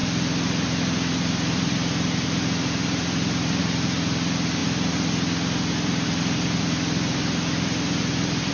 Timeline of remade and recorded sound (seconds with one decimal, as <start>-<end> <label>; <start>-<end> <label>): 0.0-8.5 recorded